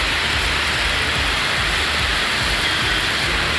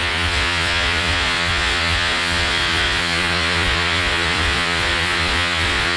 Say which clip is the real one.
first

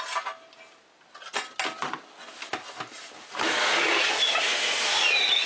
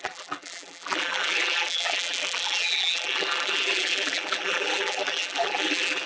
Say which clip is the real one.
first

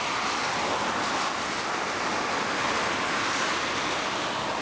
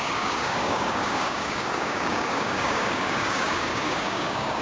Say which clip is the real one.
first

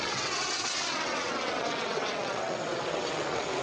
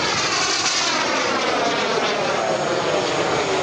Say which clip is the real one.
second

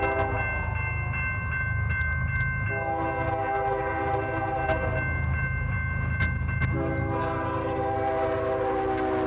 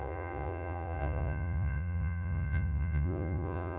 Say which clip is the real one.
first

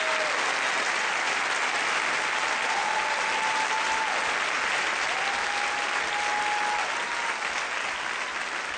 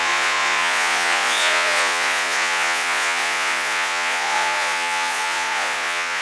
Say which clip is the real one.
first